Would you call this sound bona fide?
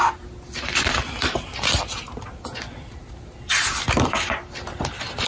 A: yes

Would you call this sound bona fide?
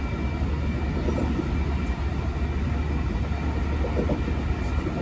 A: yes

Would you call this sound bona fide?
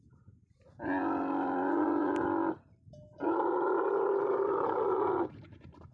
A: yes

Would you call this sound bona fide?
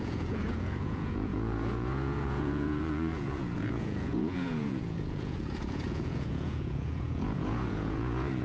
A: no